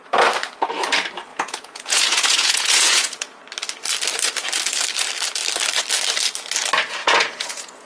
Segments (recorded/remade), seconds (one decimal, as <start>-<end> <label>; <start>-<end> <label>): 0.0-1.3 recorded; 1.3-3.4 remade; 3.4-7.0 recorded; 7.0-7.9 remade